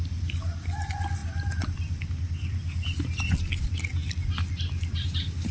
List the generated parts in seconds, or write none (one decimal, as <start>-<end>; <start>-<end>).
none